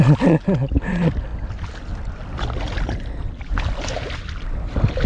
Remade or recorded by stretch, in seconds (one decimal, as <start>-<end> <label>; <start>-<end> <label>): 0.0-5.1 recorded